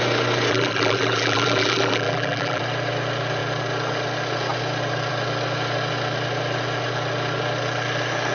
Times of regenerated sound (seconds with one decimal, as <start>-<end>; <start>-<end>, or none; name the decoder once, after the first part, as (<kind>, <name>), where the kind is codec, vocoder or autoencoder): 0.5-2.6 (vocoder, BigVGAN v2)